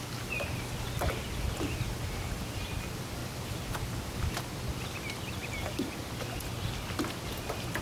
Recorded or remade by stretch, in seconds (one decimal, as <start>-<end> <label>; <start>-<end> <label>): 0.0-5.4 recorded; 5.4-6.0 remade; 6.0-7.8 recorded